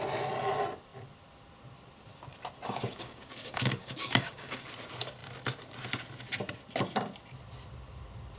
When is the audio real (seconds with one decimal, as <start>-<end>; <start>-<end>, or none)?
0.0-2.9; 4.6-8.4